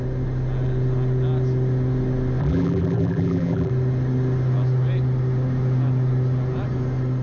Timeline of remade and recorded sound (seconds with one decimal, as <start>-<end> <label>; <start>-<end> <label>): 0.0-2.4 recorded; 2.4-3.7 remade; 3.7-7.2 recorded